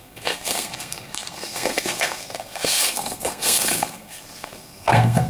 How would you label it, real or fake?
fake